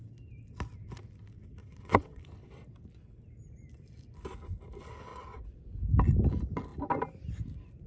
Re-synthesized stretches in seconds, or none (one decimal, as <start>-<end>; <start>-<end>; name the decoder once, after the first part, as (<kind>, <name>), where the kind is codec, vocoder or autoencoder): 1.6-2.2 (vocoder, WaveNeXt); 5.1-5.6